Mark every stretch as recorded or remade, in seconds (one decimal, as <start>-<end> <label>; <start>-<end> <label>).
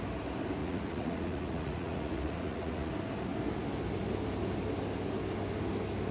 0.0-0.6 recorded; 0.6-2.9 remade; 2.9-6.1 recorded